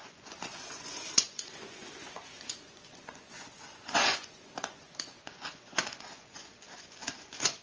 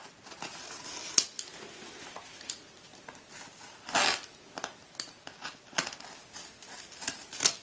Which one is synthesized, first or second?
first